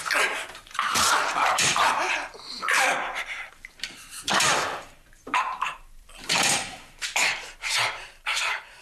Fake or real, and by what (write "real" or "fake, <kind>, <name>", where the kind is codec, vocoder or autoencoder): fake, vocoder, BigVGAN v2